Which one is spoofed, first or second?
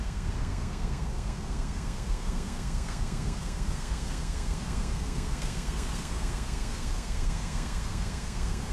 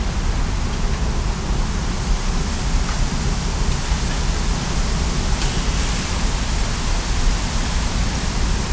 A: first